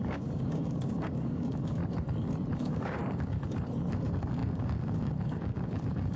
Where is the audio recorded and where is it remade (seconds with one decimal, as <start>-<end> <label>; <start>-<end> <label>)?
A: 0.0-1.8 remade; 1.8-2.6 recorded; 2.6-3.0 remade; 3.0-3.9 recorded; 3.9-6.2 remade